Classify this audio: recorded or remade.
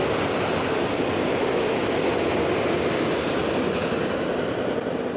recorded